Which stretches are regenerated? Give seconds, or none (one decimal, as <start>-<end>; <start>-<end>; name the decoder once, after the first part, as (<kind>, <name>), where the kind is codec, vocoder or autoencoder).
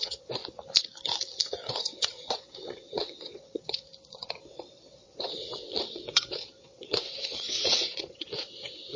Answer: 0.0-0.4 (vocoder, WaveNeXt); 1.7-3.9; 4.4-9.0